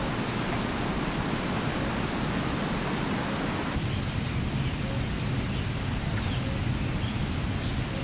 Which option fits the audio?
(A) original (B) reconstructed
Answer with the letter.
A